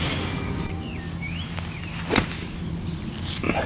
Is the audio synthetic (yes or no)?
no